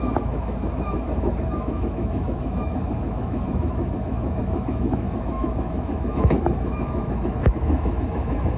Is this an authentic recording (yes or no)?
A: no